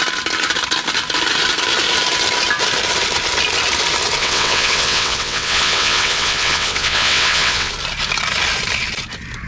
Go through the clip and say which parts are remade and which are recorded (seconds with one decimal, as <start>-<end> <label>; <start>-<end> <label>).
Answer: 0.0-4.2 recorded; 4.2-7.7 remade; 7.7-9.5 recorded

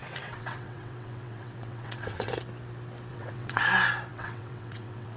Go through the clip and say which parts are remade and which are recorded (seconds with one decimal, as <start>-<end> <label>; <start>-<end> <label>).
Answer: 0.0-2.3 remade; 2.3-3.1 recorded; 3.1-3.6 remade; 3.6-4.1 recorded; 4.1-5.2 remade

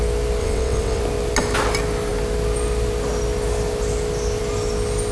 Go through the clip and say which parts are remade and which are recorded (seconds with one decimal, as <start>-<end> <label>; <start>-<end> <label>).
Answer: 0.0-0.4 recorded; 0.4-1.0 remade; 1.0-5.1 recorded

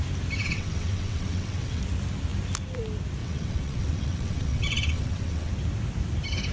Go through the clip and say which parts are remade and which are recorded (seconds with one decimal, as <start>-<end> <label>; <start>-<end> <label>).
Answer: 0.0-0.4 recorded; 0.4-1.8 remade; 1.8-3.2 recorded; 3.2-5.5 remade; 5.5-6.5 recorded

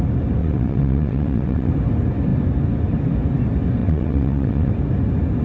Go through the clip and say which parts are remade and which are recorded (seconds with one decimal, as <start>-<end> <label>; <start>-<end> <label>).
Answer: 0.0-0.4 recorded; 0.4-1.7 remade; 1.7-3.8 recorded; 3.8-4.7 remade; 4.7-5.4 recorded

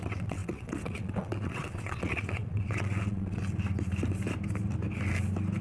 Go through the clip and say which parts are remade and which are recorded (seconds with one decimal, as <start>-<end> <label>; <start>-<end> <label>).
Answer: 0.0-3.4 remade; 3.4-5.6 recorded

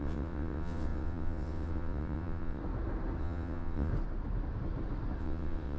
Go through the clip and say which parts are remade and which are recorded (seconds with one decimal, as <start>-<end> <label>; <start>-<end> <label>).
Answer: 0.0-2.6 remade; 2.6-3.2 recorded; 3.2-3.9 remade; 3.9-5.2 recorded; 5.2-5.8 remade

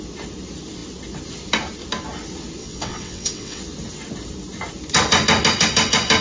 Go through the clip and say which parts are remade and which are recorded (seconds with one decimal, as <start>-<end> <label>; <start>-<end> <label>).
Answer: 0.0-2.6 recorded; 2.6-3.6 remade; 3.6-6.2 recorded